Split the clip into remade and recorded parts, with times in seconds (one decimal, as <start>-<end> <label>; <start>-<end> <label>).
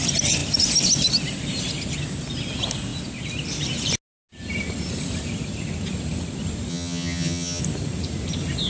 0.0-6.7 recorded; 6.7-7.6 remade; 7.6-8.7 recorded